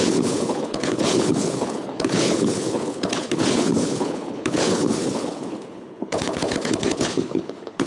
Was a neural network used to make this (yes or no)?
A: yes